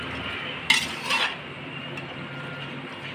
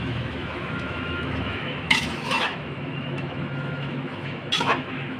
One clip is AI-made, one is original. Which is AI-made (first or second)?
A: second